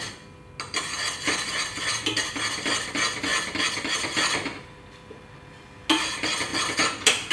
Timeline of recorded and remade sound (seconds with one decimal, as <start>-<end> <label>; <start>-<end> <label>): 0.0-7.3 recorded